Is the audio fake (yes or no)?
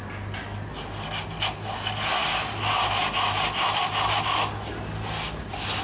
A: no